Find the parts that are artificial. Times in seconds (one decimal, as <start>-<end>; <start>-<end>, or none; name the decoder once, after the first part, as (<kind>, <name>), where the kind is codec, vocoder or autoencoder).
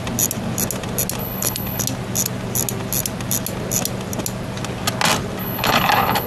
1.2-1.8 (codec, HILCodec); 5.4-6.3